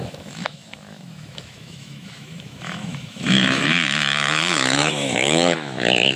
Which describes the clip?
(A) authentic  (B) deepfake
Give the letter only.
B